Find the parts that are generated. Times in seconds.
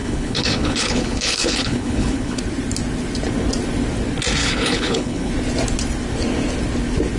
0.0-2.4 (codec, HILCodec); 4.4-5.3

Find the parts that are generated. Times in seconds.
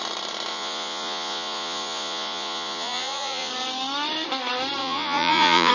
0.5-3.5 (vocoder, Vocos); 4.8-5.7